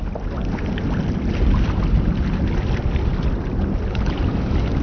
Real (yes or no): yes